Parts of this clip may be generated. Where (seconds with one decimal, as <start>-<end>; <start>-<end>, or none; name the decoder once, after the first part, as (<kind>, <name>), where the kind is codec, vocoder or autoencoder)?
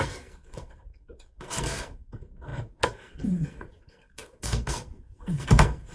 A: 0.0-5.9 (codec, SNAC)